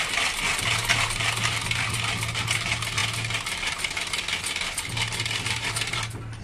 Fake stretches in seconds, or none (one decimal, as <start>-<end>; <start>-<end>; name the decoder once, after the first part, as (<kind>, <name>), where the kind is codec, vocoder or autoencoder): none